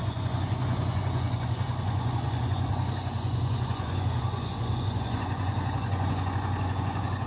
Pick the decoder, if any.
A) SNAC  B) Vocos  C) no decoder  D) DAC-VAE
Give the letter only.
B